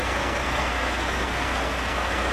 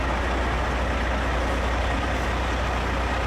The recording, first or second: second